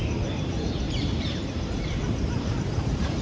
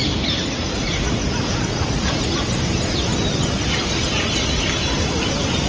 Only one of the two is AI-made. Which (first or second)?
first